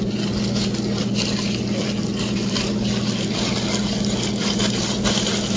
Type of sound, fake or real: fake